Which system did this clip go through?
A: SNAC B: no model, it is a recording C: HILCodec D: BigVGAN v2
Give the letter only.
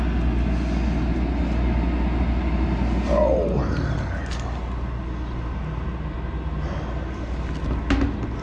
B